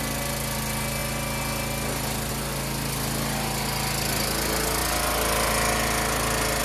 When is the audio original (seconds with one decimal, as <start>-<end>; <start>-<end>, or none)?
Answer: 0.0-6.6